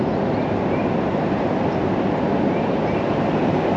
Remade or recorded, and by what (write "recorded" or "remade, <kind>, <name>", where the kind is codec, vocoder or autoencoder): recorded